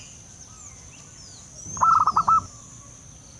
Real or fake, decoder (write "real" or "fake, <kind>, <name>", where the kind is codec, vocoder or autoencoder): real